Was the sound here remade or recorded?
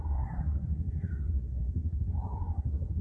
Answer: remade